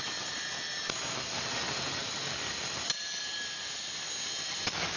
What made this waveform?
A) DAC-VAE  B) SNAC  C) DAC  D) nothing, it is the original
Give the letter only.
D